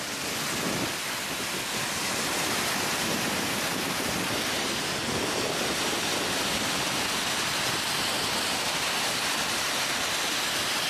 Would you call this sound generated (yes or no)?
no